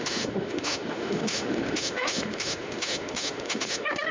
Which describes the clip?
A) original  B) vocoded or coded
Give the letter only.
B